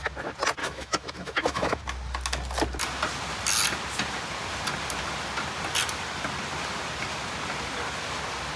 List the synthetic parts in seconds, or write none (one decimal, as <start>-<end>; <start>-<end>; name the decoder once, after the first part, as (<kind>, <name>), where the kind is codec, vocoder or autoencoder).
0.6-1.8 (autoencoder, DAC-VAE)